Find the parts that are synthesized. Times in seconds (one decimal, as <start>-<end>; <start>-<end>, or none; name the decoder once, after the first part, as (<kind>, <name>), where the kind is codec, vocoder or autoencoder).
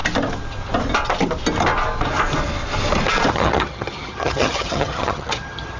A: 3.3-5.8 (vocoder, HiFi-GAN)